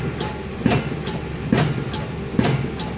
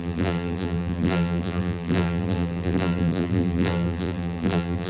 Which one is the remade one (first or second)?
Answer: second